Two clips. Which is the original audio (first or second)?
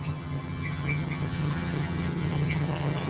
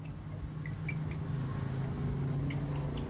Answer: second